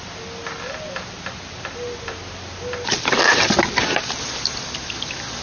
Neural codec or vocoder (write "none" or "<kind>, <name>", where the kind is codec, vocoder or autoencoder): none